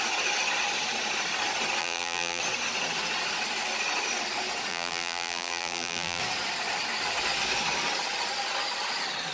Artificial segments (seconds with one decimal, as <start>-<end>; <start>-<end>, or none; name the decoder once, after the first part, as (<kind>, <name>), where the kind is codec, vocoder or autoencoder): 1.8-2.4 (vocoder, BigVGAN v2); 4.7-6.2